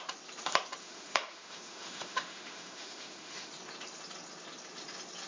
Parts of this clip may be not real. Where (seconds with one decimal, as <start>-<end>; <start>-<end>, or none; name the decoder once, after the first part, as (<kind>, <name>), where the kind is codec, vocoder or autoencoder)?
0.8-3.5 (autoencoder, DAC-VAE)